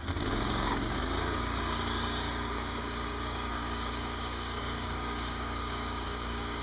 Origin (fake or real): fake